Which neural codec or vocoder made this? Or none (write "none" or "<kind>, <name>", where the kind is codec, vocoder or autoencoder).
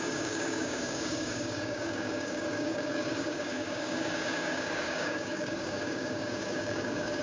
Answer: codec, DAC